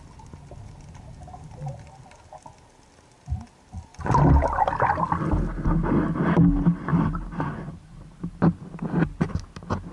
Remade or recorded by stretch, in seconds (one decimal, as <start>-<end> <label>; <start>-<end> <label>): 0.0-9.9 recorded